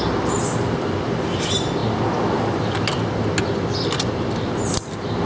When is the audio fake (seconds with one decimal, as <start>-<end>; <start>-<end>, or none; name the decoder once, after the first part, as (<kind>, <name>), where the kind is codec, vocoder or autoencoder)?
none

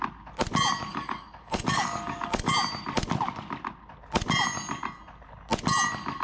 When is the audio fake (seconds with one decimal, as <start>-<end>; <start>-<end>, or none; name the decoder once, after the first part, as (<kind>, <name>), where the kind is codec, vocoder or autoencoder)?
0.9-2.5 (codec, DAC)

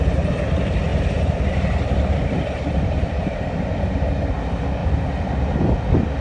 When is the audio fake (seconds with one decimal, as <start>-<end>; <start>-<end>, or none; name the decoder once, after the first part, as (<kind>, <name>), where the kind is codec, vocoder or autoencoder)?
0.9-3.7 (vocoder, BigVGAN v2); 4.8-6.2

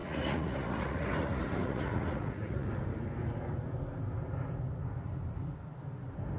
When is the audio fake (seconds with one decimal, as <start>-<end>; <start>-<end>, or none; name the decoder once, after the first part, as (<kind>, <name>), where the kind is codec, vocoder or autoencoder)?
0.0-2.7 (vocoder, Vocos)

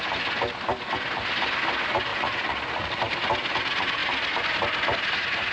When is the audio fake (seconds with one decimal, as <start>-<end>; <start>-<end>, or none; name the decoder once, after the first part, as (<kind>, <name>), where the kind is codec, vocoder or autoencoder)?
2.1-3.0 (vocoder, Vocos)

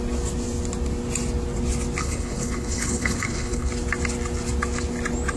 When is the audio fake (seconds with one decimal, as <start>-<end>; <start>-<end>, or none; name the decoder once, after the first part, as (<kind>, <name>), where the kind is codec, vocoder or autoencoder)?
2.0-3.7 (codec, HILCodec)

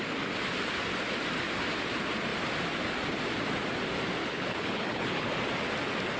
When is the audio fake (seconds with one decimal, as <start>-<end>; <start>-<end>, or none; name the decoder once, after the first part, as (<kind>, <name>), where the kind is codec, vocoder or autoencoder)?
4.2-5.3 (codec, HILCodec)

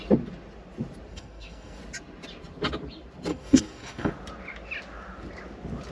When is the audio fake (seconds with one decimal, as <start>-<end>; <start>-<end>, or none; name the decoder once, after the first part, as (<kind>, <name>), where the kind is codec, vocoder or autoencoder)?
1.1-1.8 (codec, SNAC); 3.3-4.1